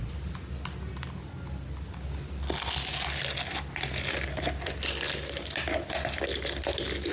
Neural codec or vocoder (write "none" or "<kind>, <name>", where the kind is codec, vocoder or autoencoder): none